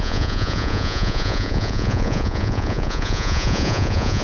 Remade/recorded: remade